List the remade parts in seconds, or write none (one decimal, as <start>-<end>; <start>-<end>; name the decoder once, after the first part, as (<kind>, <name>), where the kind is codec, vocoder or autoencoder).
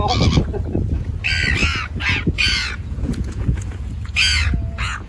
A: 1.6-5.1 (vocoder, Vocos)